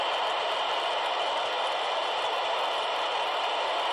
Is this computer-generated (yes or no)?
no